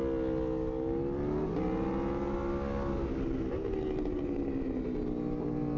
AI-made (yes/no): no